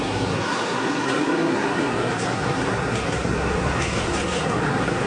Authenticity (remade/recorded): remade